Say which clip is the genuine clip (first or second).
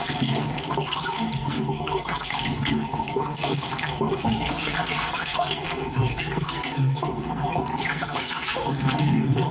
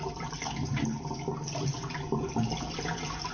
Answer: second